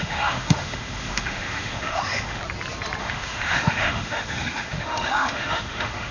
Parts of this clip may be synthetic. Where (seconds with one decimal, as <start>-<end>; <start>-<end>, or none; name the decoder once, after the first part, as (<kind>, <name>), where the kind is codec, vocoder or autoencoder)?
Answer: 0.0-2.4 (autoencoder, DAC-VAE); 3.0-6.1